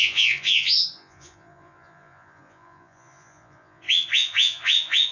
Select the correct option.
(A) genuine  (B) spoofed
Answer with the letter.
B